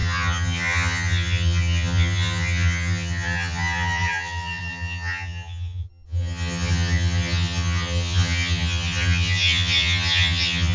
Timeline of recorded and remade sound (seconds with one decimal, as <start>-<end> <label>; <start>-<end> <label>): 0.0-10.7 remade